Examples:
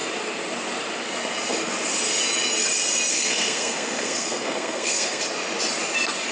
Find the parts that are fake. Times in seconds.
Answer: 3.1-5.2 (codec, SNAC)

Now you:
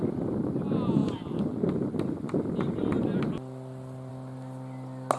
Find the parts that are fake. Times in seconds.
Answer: none